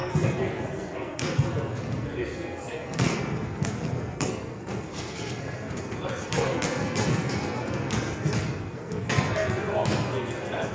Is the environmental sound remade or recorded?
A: remade